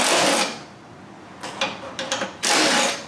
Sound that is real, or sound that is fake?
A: real